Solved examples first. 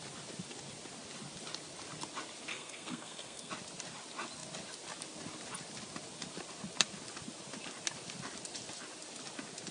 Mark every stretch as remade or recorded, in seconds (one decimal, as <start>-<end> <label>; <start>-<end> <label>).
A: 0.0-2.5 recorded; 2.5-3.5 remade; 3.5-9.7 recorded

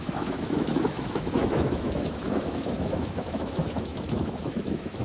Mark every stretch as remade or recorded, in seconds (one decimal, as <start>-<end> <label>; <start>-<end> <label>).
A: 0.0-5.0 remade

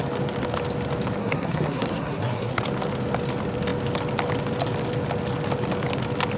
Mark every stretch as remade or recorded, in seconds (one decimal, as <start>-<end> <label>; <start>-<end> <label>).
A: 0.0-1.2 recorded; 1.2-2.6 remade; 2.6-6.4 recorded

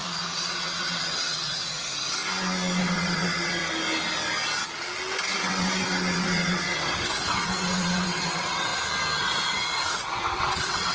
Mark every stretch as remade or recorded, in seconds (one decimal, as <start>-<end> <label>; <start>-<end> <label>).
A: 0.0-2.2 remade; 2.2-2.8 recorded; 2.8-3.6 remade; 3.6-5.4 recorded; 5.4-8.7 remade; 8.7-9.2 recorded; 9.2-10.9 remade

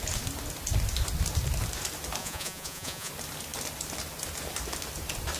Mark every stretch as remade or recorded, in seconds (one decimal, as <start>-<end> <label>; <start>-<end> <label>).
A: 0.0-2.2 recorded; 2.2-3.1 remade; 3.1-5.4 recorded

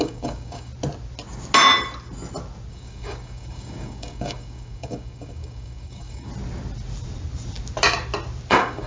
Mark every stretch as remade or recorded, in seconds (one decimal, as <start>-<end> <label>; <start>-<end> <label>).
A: 0.0-0.7 remade; 0.7-2.7 recorded; 2.7-6.3 remade; 6.3-8.5 recorded; 8.5-8.9 remade

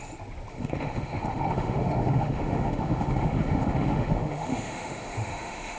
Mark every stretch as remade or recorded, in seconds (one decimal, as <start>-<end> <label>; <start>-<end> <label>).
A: 0.0-0.5 recorded; 0.5-5.8 remade